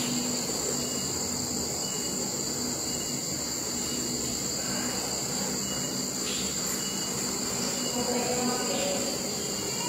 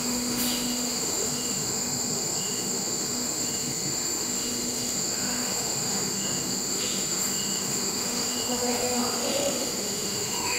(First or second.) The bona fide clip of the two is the first